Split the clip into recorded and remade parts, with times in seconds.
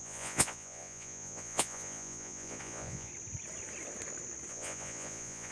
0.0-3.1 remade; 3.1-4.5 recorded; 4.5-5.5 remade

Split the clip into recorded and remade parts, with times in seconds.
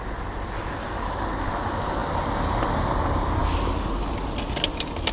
0.0-5.1 recorded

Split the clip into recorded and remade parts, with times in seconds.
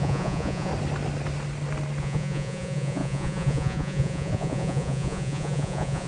0.0-0.7 remade; 0.7-2.0 recorded; 2.0-6.1 remade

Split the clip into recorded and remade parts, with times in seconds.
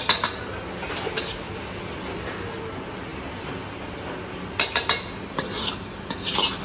0.0-6.6 recorded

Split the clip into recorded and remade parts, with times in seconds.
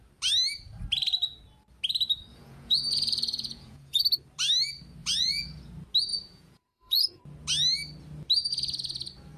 0.0-2.3 recorded; 2.3-4.0 remade; 4.0-5.0 recorded; 5.0-5.6 remade; 5.6-6.1 recorded; 6.1-7.2 remade; 7.2-9.4 recorded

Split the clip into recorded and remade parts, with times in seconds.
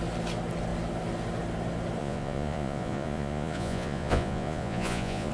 0.0-2.0 recorded; 2.0-5.3 remade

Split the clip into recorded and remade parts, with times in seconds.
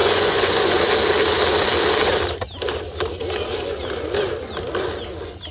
0.0-0.8 remade; 0.8-5.5 recorded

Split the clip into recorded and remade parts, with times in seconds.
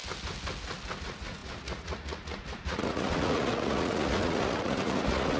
0.0-1.0 recorded; 1.0-5.4 remade